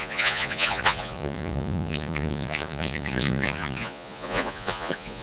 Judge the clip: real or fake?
fake